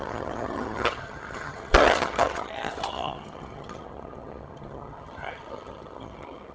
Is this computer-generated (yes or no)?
yes